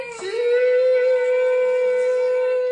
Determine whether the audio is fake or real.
real